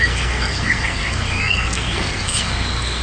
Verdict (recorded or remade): remade